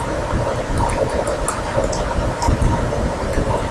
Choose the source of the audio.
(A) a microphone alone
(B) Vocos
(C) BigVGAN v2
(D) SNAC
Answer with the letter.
A